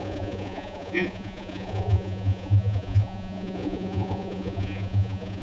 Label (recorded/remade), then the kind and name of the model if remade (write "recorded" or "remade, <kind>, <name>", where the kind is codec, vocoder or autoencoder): remade, vocoder, Vocos